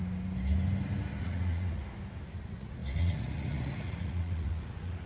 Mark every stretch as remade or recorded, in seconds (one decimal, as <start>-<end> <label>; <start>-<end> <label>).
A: 0.0-1.2 recorded; 1.2-1.8 remade; 1.8-2.4 recorded; 2.4-5.1 remade